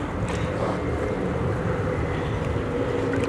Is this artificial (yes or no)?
no